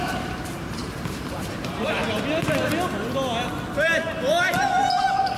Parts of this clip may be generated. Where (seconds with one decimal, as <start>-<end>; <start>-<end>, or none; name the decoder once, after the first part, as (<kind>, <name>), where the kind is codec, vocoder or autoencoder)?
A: 0.0-2.0 (vocoder, BigVGAN v2)